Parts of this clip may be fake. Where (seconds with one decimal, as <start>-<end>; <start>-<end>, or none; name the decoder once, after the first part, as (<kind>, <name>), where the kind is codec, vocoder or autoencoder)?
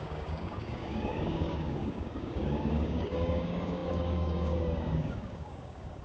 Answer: 0.0-6.0 (codec, DAC)